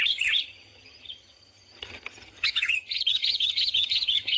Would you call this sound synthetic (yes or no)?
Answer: yes